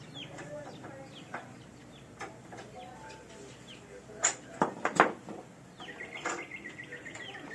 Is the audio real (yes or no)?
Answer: yes